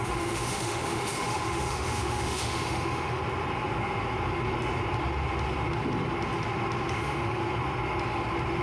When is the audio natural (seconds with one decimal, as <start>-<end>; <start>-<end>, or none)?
3.2-6.9; 7.4-8.6